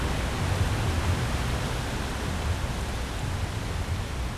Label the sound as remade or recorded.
recorded